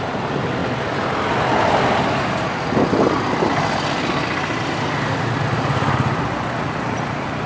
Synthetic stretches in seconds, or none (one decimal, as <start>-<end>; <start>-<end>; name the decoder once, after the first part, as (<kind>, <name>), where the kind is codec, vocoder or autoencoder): none